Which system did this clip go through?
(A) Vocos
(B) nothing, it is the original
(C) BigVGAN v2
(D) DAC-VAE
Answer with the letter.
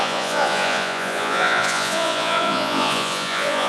A